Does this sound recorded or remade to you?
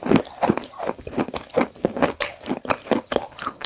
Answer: recorded